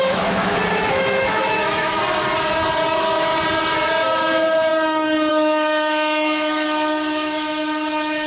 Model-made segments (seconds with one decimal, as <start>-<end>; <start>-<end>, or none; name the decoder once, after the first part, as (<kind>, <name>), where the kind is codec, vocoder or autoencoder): 0.0-2.0 (autoencoder, DAC-VAE); 2.9-3.3; 3.9-4.7; 5.3-8.3

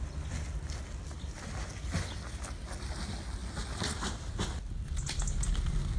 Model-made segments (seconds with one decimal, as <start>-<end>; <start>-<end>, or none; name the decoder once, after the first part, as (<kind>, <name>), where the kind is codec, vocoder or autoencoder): none